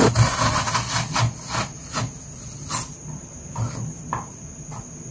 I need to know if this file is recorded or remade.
recorded